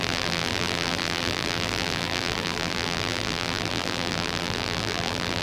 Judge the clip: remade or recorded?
remade